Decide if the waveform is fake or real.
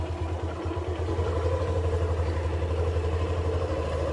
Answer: real